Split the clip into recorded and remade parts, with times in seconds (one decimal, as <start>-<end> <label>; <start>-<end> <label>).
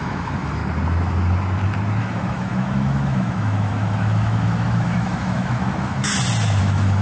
0.0-0.6 remade; 0.6-2.0 recorded; 2.0-6.1 remade; 6.1-6.6 recorded; 6.6-7.0 remade